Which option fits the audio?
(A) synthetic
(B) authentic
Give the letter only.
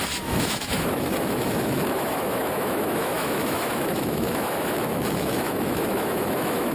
A